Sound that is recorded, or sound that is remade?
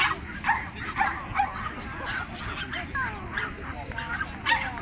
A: recorded